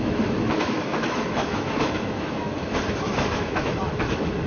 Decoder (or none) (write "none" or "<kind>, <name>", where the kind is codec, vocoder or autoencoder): autoencoder, DAC-VAE